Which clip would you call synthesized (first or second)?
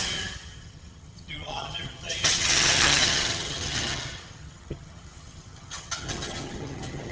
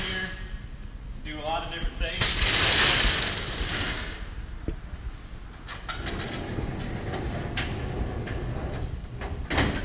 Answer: first